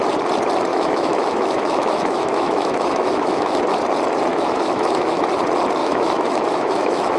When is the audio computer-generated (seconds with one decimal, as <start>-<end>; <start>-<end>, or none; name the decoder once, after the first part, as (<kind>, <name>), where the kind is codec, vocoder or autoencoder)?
0.7-3.6 (autoencoder, DAC-VAE); 4.3-5.2; 5.8-7.2